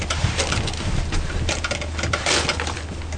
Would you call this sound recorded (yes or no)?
yes